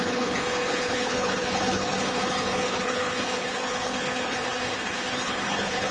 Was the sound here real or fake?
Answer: fake